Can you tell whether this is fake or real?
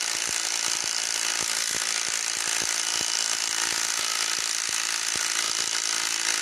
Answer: real